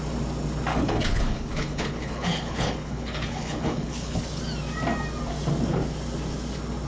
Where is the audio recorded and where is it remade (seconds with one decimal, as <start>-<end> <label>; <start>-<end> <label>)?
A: 0.0-0.7 recorded; 0.7-4.2 remade; 4.2-6.9 recorded

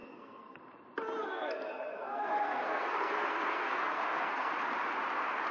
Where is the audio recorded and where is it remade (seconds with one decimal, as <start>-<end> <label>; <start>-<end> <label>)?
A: 0.0-0.6 remade; 0.6-1.2 recorded; 1.2-4.5 remade; 4.5-5.5 recorded

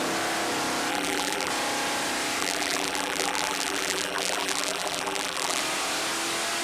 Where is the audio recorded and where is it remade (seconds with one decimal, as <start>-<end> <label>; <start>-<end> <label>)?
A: 0.0-0.9 recorded; 0.9-1.5 remade; 1.5-2.4 recorded; 2.4-5.6 remade; 5.6-6.6 recorded

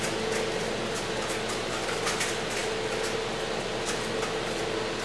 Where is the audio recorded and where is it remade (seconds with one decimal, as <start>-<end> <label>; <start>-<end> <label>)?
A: 0.0-5.0 recorded

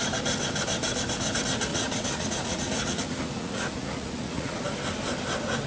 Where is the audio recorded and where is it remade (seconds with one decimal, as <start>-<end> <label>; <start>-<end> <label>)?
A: 0.0-1.7 recorded; 1.7-4.6 remade; 4.6-5.7 recorded

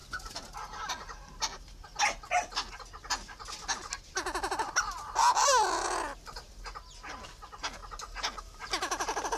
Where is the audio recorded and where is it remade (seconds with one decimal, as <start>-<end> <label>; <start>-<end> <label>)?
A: 0.0-9.4 recorded

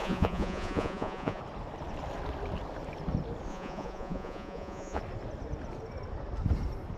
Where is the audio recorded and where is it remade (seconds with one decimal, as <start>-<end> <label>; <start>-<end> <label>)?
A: 0.0-1.4 remade; 1.4-3.5 recorded; 3.5-5.0 remade; 5.0-7.0 recorded

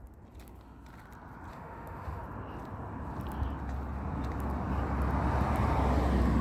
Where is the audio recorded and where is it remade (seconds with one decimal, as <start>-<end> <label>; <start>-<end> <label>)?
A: 0.0-1.5 recorded; 1.5-2.2 remade; 2.2-6.4 recorded